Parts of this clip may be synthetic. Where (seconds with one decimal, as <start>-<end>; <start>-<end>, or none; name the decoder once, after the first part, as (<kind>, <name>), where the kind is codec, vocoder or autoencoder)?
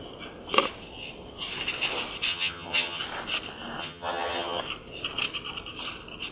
2.3-3.0 (vocoder, HiFi-GAN); 3.8-4.6